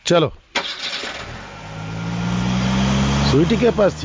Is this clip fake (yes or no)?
no